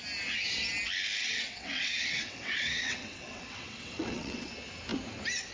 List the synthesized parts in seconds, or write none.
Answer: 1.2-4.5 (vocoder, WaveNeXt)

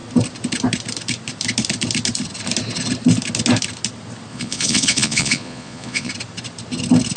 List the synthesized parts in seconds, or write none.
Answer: 4.3-6.1 (vocoder, Vocos)

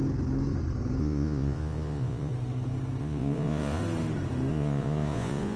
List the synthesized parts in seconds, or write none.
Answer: 1.0-2.3 (vocoder, Vocos); 3.0-3.8; 4.5-5.6

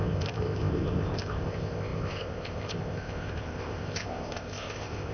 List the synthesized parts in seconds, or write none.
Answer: 0.0-5.1 (codec, ZipCodec)

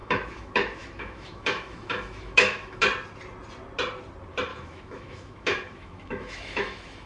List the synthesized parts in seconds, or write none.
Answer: 0.0-2.8 (autoencoder, DAC-VAE); 4.5-7.1